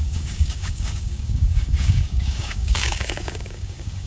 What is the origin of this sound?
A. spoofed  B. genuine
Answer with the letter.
A